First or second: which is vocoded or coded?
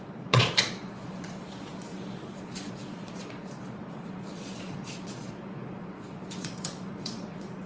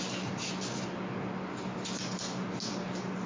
first